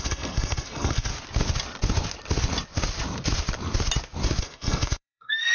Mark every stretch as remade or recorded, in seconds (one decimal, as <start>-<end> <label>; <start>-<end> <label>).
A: 0.0-1.1 remade; 1.1-4.4 recorded; 4.4-5.5 remade